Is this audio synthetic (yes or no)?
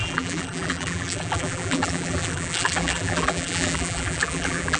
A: yes